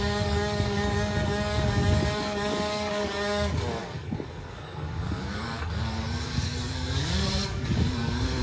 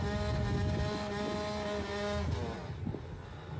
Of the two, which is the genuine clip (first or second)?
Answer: second